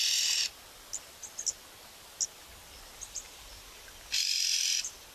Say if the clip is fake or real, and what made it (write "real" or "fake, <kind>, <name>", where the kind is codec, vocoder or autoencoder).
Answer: real